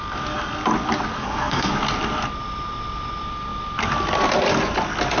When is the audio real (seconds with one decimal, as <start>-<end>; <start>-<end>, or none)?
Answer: 0.0-1.2; 1.7-5.2